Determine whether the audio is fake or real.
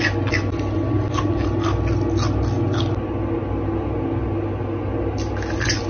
real